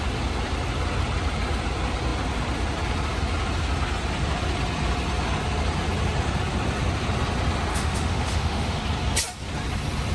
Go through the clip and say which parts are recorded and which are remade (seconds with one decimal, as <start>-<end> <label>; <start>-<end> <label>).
0.0-7.7 recorded; 7.7-8.8 remade; 8.8-10.1 recorded